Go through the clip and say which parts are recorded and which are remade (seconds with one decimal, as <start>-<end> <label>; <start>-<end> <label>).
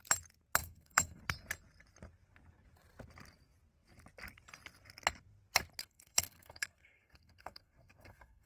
0.0-0.6 recorded; 0.6-1.2 remade; 1.2-5.8 recorded; 5.8-8.5 remade